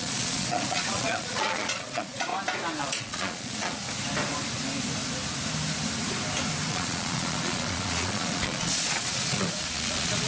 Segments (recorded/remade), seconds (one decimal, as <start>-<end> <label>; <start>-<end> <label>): 0.0-2.3 remade; 2.3-2.8 recorded; 2.8-3.8 remade; 3.8-6.7 recorded; 6.7-10.3 remade